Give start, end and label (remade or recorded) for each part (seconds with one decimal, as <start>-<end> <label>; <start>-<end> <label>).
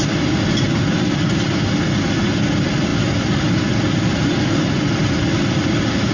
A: 0.0-6.1 recorded